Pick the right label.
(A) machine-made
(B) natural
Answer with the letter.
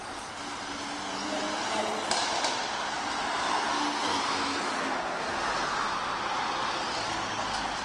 B